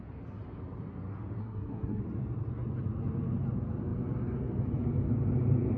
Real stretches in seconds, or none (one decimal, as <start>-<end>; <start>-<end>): 0.0-1.4; 2.0-5.8